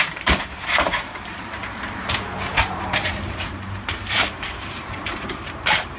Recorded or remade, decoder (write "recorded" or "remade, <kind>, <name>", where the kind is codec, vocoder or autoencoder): remade, vocoder, BigVGAN v2